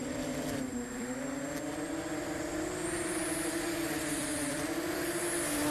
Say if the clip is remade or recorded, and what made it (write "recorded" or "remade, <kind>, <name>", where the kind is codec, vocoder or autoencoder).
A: remade, vocoder, BigVGAN v2